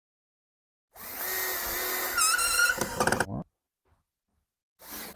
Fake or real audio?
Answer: real